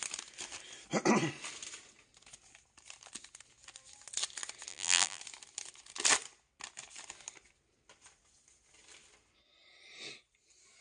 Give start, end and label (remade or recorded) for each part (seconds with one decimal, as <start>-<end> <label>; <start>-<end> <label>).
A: 0.0-4.7 recorded; 4.7-5.2 remade; 5.2-10.8 recorded